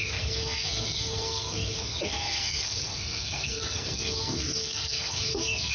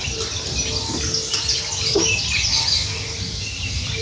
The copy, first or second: first